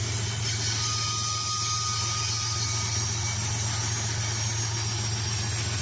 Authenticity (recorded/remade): recorded